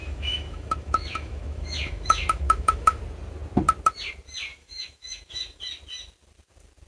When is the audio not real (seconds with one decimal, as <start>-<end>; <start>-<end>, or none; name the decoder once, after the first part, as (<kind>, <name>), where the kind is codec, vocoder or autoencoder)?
0.0-3.0 (autoencoder, DAC-VAE); 4.5-5.6